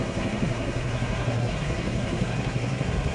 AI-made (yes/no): yes